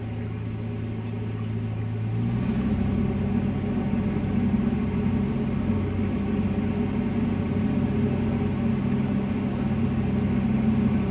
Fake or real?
real